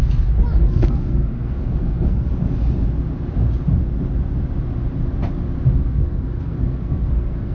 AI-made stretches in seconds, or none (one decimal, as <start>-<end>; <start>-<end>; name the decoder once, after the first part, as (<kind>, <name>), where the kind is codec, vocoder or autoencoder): 0.6-2.3 (codec, SNAC); 5.9-7.5